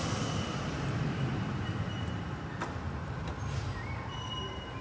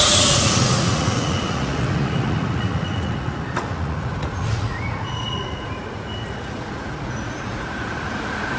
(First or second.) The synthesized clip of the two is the second